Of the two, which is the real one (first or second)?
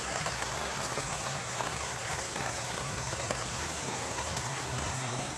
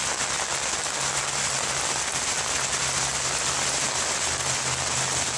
second